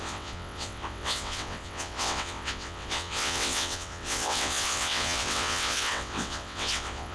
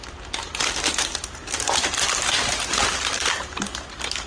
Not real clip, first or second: first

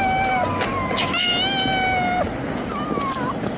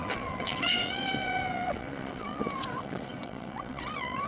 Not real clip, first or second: second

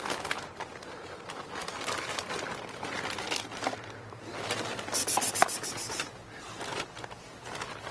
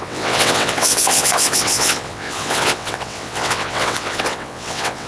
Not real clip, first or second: second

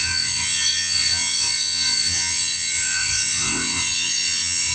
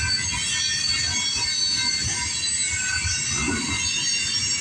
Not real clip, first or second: first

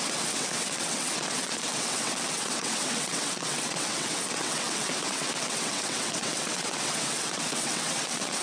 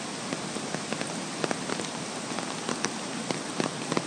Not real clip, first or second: first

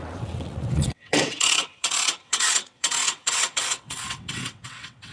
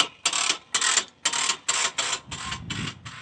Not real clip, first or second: first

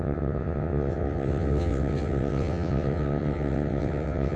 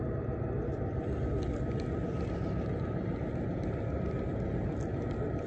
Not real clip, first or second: first